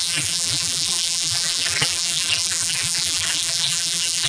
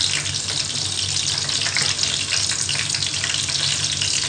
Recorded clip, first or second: second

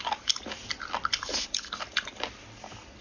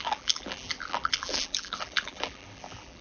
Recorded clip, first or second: first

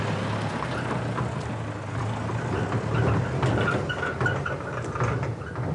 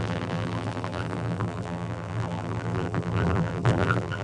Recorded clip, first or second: first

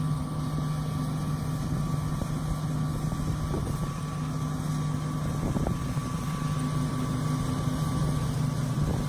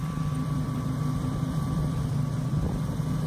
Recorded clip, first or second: first